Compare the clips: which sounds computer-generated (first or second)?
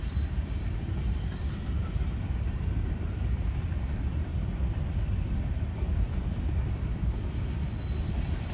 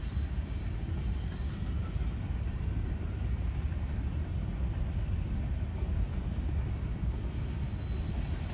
first